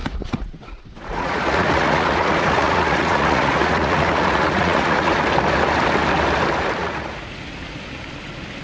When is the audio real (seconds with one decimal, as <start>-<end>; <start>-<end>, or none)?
5.2-6.8; 7.4-8.6